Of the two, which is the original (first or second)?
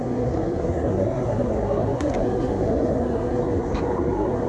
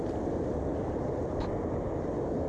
second